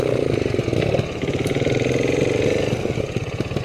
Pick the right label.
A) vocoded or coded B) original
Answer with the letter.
B